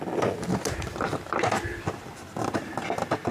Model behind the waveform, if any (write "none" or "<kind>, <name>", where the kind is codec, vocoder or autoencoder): none